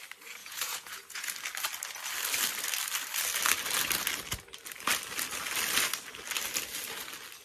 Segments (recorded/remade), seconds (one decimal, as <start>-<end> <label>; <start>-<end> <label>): 0.0-0.4 recorded; 0.4-1.3 remade; 1.3-7.4 recorded